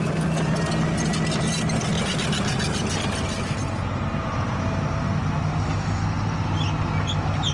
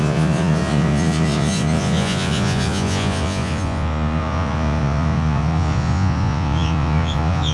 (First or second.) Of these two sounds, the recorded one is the first